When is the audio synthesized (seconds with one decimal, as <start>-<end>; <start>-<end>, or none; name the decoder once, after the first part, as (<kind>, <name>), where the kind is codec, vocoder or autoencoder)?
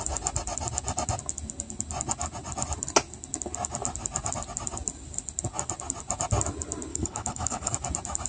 6.9-7.7 (codec, HILCodec)